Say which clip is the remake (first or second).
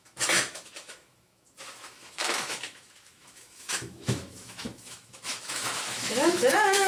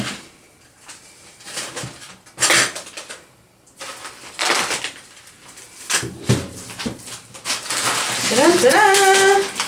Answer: first